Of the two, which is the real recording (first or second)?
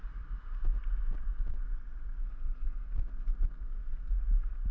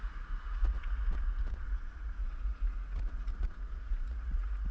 first